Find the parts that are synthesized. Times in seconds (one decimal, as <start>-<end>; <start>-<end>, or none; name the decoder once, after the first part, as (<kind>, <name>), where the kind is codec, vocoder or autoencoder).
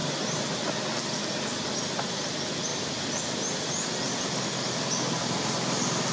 none